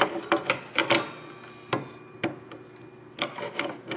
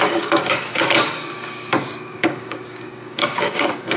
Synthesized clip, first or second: second